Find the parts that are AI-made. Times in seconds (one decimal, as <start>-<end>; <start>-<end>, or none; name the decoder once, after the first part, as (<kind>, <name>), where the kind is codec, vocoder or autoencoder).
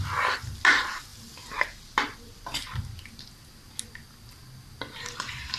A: none